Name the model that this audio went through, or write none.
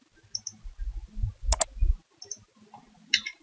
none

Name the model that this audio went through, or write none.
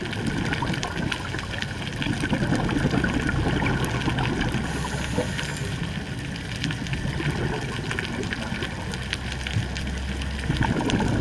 none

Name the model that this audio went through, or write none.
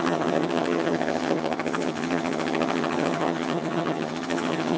vocoder, HiFi-GAN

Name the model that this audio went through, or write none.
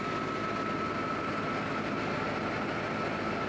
none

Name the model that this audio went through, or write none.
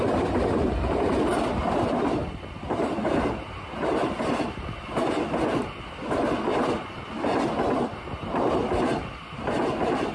none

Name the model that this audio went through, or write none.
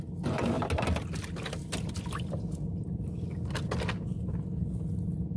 none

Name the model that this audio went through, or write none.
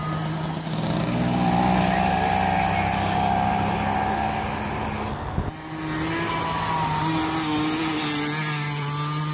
none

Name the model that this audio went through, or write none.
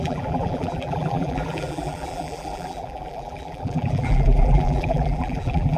vocoder, BigVGAN v2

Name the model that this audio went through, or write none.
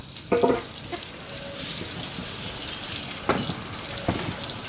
none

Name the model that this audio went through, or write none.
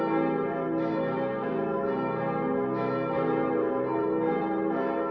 none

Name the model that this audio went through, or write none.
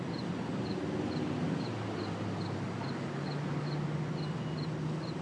none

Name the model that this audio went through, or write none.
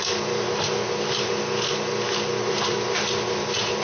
none